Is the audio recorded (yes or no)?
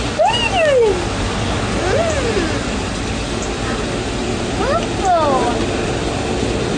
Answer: yes